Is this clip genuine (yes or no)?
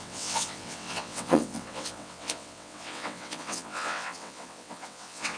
no